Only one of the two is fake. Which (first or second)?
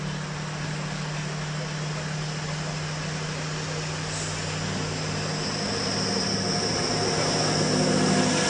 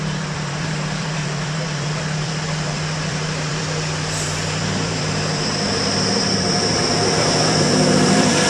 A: second